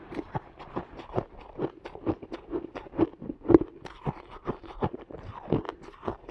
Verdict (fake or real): real